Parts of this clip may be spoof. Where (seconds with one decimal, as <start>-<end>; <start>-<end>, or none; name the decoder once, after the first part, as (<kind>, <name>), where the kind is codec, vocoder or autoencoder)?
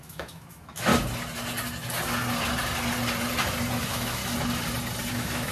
0.0-0.9 (autoencoder, DAC-VAE); 3.8-4.2; 5.1-5.5